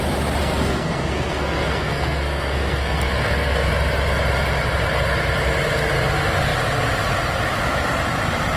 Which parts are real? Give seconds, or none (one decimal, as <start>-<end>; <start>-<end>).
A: 0.0-0.4; 3.7-8.6